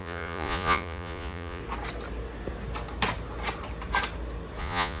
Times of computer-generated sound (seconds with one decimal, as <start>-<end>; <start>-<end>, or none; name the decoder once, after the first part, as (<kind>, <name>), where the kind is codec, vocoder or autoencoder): 0.0-1.6 (vocoder, Vocos); 4.6-5.0

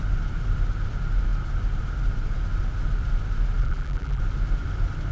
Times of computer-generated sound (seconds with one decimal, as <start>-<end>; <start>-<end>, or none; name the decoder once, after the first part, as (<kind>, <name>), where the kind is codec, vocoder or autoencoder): 3.6-4.2 (vocoder, BigVGAN v2)